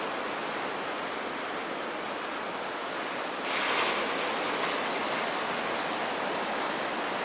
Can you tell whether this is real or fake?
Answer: real